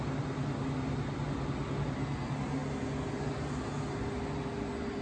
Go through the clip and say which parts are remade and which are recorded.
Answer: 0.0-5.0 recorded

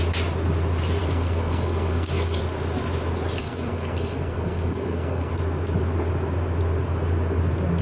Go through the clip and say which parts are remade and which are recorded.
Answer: 0.0-1.0 recorded; 1.0-2.4 remade; 2.4-3.4 recorded; 3.4-5.3 remade; 5.3-7.8 recorded

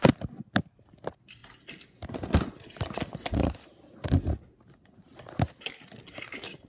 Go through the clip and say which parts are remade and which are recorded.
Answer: 0.0-6.7 recorded

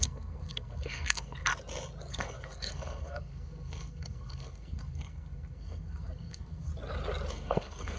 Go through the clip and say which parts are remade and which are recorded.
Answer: 0.0-1.5 remade; 1.5-2.1 recorded; 2.1-6.7 remade; 6.7-7.3 recorded; 7.3-8.0 remade

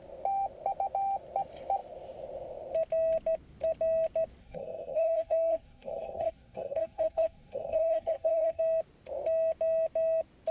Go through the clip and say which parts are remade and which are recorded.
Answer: 0.0-4.4 recorded; 4.4-8.6 remade; 8.6-10.5 recorded

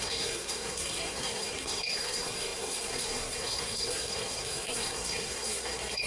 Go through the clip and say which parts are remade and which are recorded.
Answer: 0.0-6.1 remade

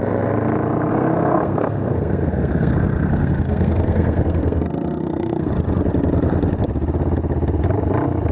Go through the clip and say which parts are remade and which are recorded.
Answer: 0.0-0.9 recorded; 0.9-5.5 remade; 5.5-8.3 recorded